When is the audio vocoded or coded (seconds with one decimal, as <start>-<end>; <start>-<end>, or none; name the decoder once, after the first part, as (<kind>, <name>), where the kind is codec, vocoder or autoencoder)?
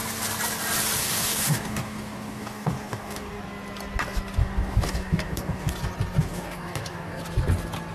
1.0-3.4 (codec, DAC); 4.4-5.7; 6.2-7.2